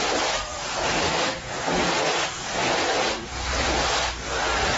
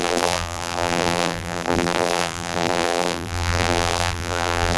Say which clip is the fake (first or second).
second